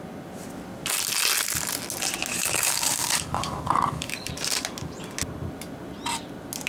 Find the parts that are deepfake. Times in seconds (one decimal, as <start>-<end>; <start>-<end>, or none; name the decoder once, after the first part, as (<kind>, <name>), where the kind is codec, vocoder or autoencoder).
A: 2.3-4.3 (codec, DAC)